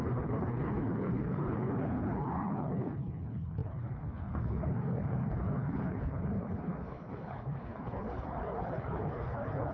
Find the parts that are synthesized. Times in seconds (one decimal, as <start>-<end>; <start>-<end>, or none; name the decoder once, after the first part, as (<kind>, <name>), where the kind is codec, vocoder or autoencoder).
0.0-9.7 (codec, HILCodec)